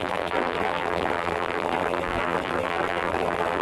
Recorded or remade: remade